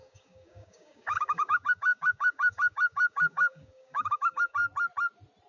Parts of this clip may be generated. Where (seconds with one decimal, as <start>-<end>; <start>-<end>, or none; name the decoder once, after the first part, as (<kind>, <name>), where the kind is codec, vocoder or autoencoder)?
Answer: 0.0-4.6 (codec, DAC)